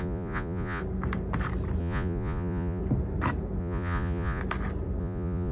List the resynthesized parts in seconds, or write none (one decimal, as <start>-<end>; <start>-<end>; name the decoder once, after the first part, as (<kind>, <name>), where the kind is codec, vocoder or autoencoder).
0.0-0.8 (vocoder, Vocos); 1.8-2.8; 3.6-4.4; 5.0-5.5